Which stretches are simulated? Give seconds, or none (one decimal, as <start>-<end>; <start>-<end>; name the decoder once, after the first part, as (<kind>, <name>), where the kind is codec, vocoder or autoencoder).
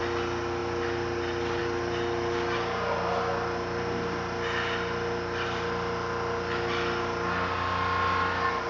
none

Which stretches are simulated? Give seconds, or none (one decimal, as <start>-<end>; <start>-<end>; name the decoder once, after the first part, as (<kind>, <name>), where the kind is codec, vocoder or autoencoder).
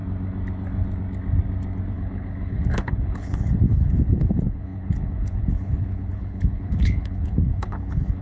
1.9-8.2 (codec, HILCodec)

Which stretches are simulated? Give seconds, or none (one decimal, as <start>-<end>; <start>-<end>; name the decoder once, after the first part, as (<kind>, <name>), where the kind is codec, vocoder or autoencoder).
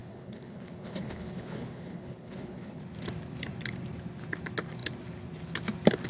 0.0-2.8 (codec, HILCodec)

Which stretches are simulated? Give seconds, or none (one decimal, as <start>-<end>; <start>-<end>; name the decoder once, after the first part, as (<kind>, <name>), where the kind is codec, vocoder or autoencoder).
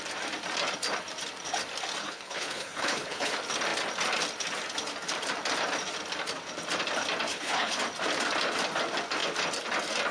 2.0-3.3 (codec, HILCodec); 7.3-7.8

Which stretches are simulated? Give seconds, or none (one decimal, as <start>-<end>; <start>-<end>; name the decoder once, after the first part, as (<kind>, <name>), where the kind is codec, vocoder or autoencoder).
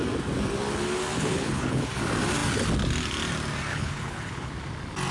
1.2-1.9 (codec, HILCodec); 3.7-4.5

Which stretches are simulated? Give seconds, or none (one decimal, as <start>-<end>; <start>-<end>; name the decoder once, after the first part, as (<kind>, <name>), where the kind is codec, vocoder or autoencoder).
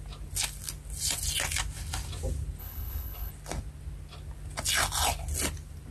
2.6-3.3 (codec, HILCodec)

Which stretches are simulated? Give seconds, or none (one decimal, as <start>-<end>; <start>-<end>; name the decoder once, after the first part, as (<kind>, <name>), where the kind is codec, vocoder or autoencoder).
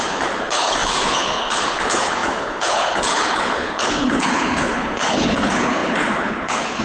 0.0-6.8 (codec, HILCodec)